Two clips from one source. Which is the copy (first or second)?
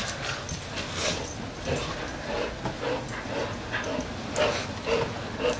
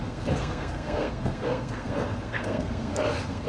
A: second